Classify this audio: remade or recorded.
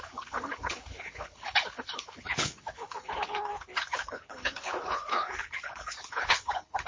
remade